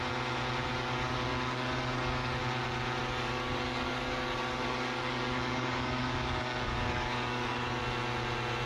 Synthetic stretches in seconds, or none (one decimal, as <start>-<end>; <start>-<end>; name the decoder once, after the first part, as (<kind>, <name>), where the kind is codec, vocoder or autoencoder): 0.7-2.4 (codec, DAC); 3.0-7.8